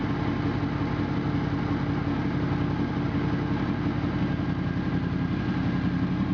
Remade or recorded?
recorded